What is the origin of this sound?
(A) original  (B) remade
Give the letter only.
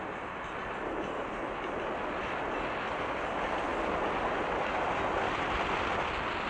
A